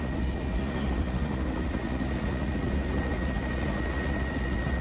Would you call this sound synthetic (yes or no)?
yes